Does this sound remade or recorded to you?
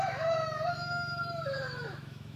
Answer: remade